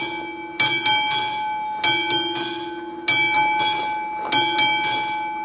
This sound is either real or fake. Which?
real